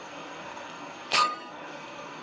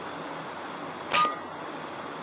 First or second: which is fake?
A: first